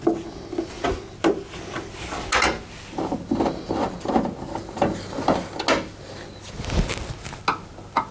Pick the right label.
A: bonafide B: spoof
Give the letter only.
A